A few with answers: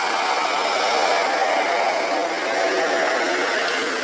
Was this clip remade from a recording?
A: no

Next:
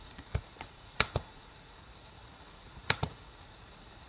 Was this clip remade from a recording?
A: yes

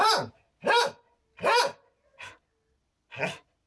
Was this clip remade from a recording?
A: no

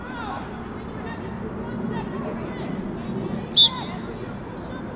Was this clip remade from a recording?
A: no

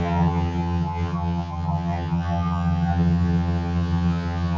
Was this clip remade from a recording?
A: yes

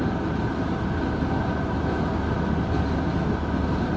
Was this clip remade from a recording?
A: no